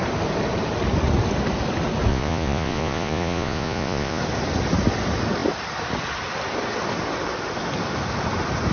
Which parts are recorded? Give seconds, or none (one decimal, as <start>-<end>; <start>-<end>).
0.0-2.1; 4.2-8.7